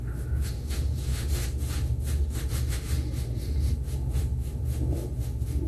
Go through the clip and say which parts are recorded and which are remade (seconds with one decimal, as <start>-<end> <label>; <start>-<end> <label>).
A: 0.0-5.7 remade